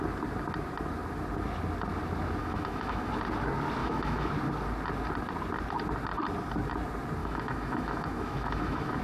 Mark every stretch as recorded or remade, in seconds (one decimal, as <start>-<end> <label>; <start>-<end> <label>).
0.0-2.4 recorded; 2.4-3.1 remade; 3.1-3.8 recorded; 3.8-4.3 remade; 4.3-7.2 recorded; 7.2-9.0 remade